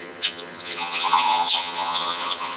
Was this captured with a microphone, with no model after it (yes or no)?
no